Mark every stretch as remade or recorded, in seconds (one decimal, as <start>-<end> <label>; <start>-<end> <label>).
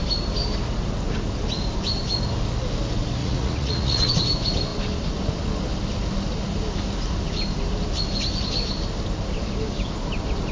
0.0-3.2 recorded; 3.2-4.1 remade; 4.1-10.5 recorded